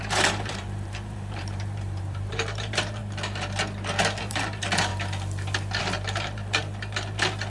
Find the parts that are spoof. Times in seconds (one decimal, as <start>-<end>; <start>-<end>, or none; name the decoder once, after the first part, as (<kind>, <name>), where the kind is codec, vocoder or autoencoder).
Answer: 0.0-3.0 (vocoder, BigVGAN v2); 4.2-4.9; 5.8-6.6